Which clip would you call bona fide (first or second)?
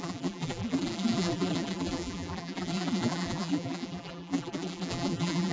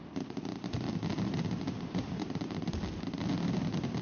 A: second